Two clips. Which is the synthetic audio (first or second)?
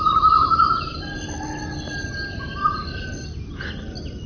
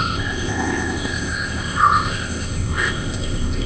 second